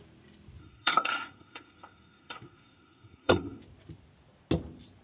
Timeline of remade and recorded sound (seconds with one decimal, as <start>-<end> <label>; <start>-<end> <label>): 0.0-0.6 recorded; 0.6-3.6 remade; 3.6-5.0 recorded